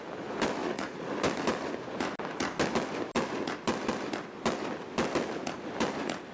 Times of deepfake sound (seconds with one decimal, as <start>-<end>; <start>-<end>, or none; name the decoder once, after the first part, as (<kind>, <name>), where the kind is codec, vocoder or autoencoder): 0.6-1.1 (vocoder, Vocos)